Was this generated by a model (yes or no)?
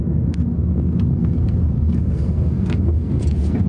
yes